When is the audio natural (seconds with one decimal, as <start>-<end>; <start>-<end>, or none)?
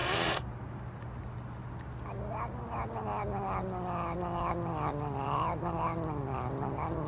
0.0-7.1